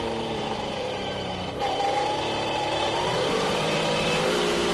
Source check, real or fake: fake